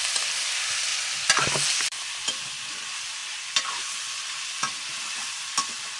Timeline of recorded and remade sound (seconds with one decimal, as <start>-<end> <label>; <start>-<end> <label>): 0.0-0.9 remade; 0.9-1.8 recorded; 1.8-6.0 remade